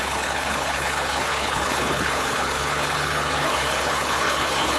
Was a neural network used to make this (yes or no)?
yes